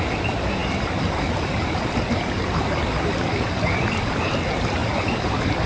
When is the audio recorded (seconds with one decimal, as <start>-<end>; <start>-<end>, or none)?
0.0-0.6; 4.0-5.7